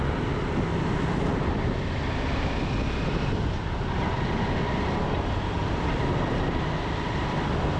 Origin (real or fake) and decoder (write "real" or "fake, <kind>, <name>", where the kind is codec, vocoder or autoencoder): real